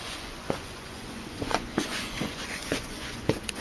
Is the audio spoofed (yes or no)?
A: yes